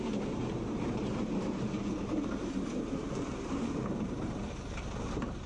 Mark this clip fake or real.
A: fake